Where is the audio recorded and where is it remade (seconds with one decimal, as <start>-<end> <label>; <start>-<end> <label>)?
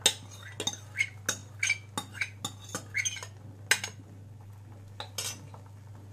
0.0-6.1 recorded